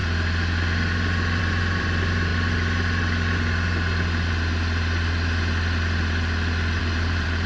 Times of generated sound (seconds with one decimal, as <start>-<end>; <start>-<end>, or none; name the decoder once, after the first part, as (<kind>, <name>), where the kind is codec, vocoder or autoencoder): 1.4-2.3 (vocoder, BigVGAN v2); 6.8-7.5